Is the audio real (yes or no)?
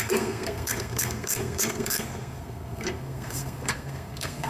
no